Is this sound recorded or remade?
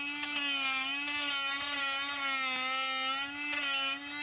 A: recorded